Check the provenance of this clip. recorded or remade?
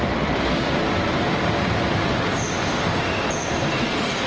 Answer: recorded